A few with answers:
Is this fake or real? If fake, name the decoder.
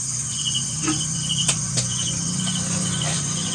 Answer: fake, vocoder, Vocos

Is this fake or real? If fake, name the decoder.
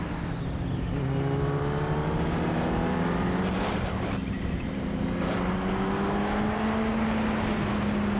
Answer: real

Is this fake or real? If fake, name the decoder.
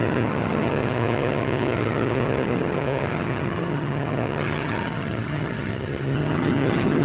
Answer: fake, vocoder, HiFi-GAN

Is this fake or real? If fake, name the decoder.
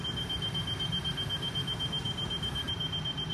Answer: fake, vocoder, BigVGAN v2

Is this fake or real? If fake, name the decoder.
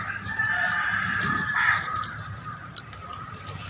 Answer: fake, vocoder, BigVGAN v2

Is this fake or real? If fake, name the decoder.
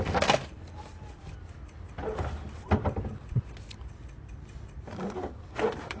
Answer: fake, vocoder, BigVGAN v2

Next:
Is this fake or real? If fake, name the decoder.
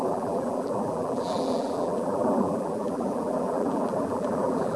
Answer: fake, vocoder, BigVGAN v2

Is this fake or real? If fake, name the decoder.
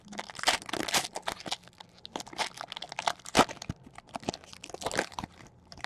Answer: real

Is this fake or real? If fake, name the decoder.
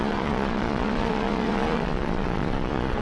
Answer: fake, vocoder, Vocos